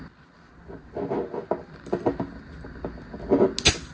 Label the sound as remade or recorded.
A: recorded